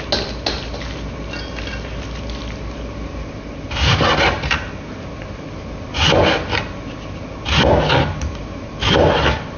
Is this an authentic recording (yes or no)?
yes